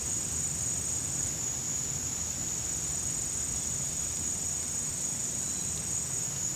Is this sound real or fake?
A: real